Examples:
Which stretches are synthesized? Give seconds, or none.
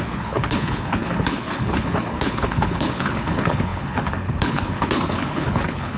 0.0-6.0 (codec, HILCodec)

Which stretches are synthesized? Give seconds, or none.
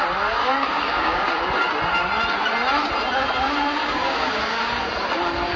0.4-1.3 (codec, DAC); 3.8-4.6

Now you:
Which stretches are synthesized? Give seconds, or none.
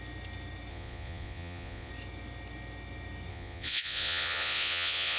0.7-1.9 (vocoder, Vocos); 3.3-5.2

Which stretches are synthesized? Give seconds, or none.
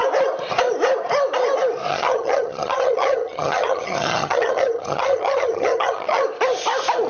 1.9-6.2 (vocoder, HiFi-GAN)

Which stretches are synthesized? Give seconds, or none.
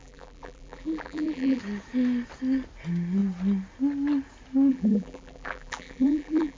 0.0-1.6 (vocoder, BigVGAN v2); 4.7-6.6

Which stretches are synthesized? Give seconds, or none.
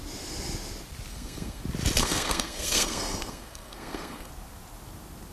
1.1-1.6 (codec, SNAC); 2.0-4.3